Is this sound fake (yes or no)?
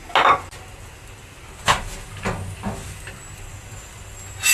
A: no